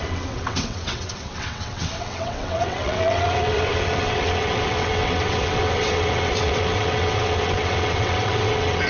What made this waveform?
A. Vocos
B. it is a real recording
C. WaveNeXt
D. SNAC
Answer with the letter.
C